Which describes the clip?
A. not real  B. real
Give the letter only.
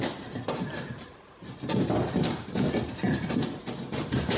B